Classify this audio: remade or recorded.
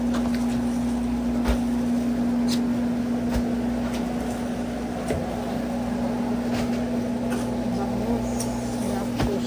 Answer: recorded